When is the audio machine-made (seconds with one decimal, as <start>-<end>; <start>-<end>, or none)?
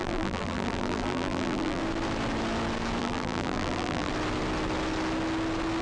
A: 0.0-1.8; 3.0-4.1